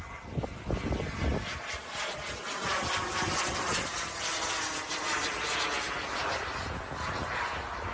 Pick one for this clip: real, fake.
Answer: real